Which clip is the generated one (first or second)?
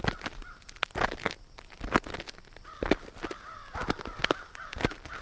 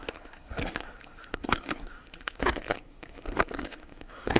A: second